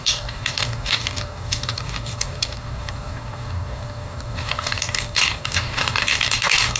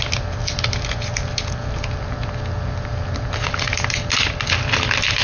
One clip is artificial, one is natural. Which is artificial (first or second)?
first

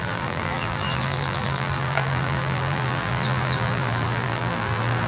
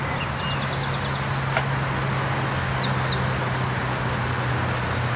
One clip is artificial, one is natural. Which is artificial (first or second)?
first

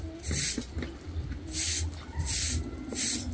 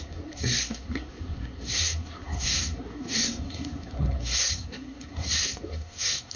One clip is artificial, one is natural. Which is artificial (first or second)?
second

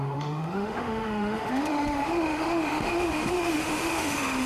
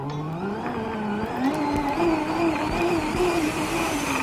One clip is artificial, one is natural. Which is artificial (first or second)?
first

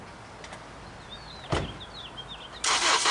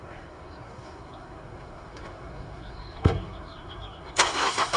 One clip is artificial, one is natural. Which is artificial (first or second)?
second